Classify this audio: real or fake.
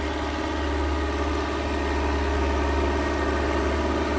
real